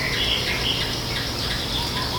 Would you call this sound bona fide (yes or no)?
yes